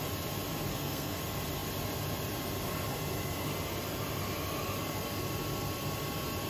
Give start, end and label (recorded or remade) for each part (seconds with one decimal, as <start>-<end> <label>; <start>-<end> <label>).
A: 0.0-0.7 recorded; 0.7-1.2 remade; 1.2-6.5 recorded